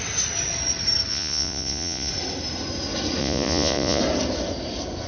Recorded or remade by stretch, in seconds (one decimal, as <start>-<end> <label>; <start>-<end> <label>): 0.0-1.1 recorded; 1.1-2.1 remade; 2.1-3.2 recorded; 3.2-4.0 remade; 4.0-5.1 recorded